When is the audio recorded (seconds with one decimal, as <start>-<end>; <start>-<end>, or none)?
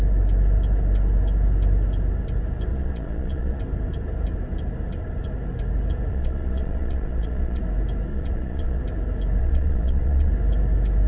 0.0-2.7; 3.6-6.1; 7.6-8.1; 8.8-9.4; 10.3-11.1